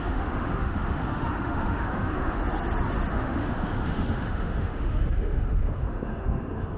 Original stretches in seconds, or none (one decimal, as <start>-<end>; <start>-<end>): 2.4-3.1